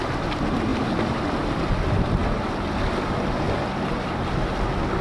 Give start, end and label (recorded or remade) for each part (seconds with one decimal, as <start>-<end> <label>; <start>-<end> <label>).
0.0-5.0 recorded